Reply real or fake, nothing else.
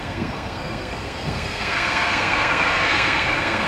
fake